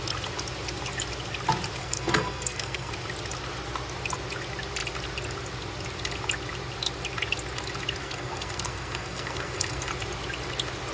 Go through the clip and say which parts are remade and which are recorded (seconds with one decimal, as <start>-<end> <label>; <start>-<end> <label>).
0.0-1.8 recorded; 1.8-2.9 remade; 2.9-8.0 recorded; 8.0-9.9 remade; 9.9-10.9 recorded